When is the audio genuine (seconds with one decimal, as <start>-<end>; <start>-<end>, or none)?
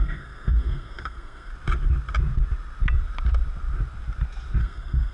1.5-4.6